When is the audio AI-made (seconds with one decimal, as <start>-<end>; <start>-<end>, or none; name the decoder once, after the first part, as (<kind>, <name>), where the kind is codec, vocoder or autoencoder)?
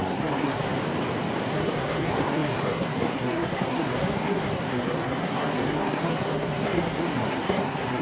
0.0-0.7 (codec, SNAC); 1.4-8.0